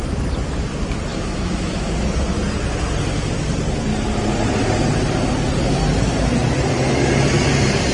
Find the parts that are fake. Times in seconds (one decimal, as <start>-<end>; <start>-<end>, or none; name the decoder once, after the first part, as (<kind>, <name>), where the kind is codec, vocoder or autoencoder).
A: 1.1-1.9 (autoencoder, DAC-VAE)